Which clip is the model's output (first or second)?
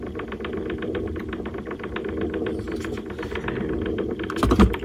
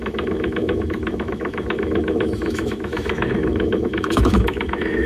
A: second